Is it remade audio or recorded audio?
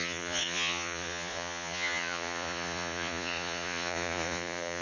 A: remade